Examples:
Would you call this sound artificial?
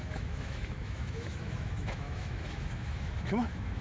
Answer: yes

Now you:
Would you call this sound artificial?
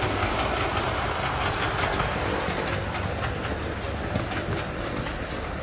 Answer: no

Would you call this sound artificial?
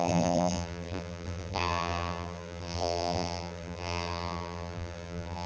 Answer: yes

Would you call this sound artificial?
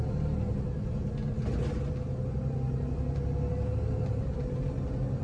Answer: no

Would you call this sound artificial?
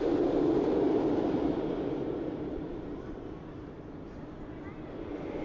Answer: yes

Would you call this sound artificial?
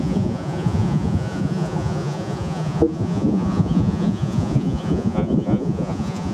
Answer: yes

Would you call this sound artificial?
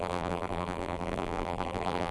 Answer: yes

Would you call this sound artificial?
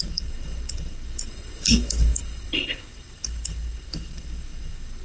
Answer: yes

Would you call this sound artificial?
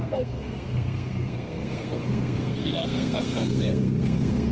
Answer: yes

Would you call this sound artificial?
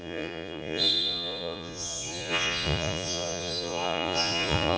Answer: yes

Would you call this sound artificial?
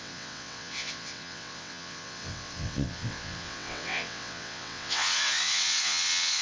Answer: yes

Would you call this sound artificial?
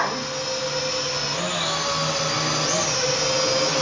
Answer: no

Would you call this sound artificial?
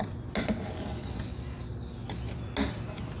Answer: no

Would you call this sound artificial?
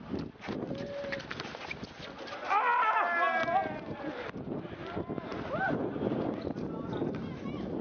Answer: no